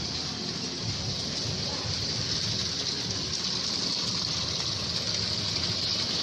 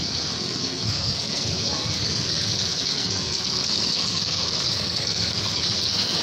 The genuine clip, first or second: first